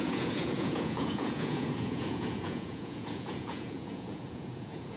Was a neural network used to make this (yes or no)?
yes